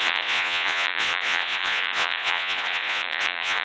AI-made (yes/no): yes